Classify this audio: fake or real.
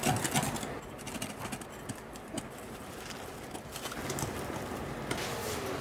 real